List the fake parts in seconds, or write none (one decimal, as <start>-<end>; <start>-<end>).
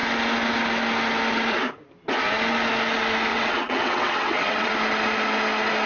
3.3-4.7